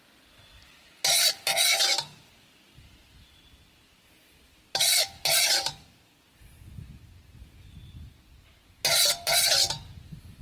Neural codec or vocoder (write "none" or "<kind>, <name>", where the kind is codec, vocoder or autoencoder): none